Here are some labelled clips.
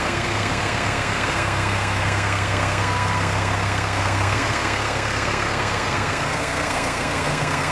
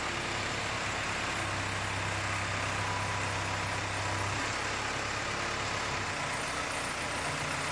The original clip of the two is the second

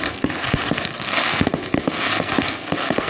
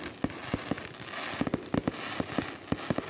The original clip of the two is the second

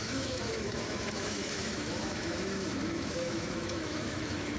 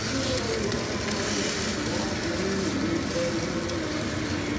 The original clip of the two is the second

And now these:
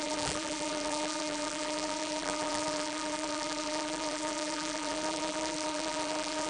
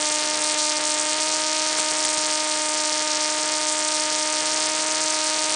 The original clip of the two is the second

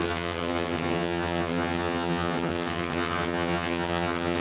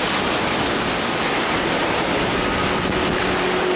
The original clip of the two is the second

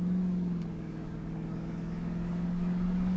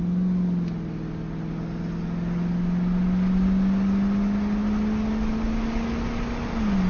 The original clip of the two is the second